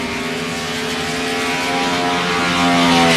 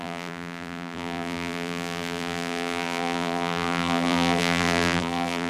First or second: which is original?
first